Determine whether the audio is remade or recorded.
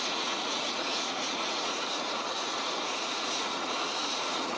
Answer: remade